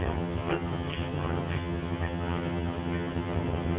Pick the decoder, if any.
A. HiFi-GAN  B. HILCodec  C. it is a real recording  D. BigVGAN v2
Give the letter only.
A